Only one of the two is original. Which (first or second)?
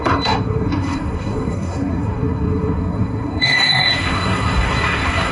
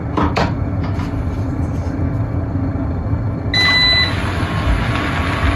second